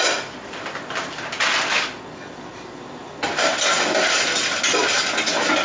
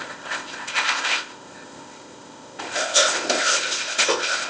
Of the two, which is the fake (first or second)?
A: second